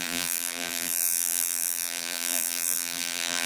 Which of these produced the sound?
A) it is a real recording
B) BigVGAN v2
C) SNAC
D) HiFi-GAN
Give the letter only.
B